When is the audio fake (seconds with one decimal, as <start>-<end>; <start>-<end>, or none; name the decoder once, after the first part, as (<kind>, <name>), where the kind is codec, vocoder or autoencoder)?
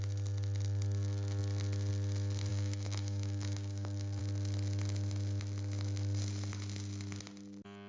2.5-4.2 (codec, DAC)